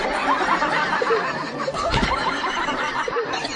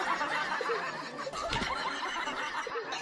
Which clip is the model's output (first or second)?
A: first